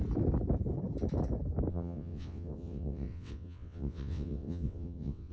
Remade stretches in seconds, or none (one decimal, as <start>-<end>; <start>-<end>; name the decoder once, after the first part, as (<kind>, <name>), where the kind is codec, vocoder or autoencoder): 1.7-5.3 (vocoder, WaveNeXt)